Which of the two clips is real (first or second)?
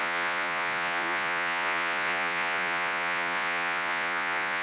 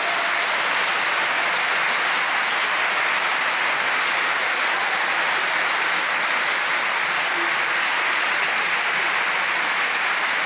second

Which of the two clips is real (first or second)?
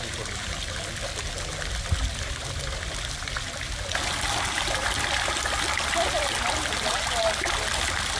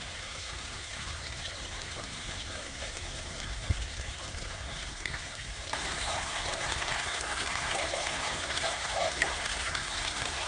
first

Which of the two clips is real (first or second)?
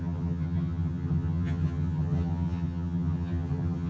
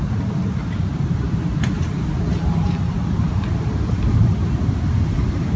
second